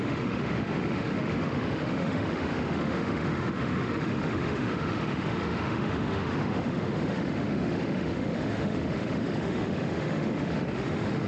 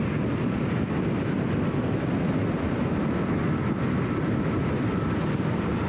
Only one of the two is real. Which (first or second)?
second